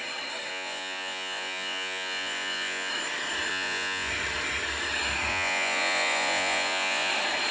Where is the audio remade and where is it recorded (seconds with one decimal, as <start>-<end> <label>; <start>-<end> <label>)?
0.0-0.5 recorded; 0.5-2.9 remade; 2.9-3.5 recorded; 3.5-4.1 remade; 4.1-5.3 recorded; 5.3-7.1 remade; 7.1-7.5 recorded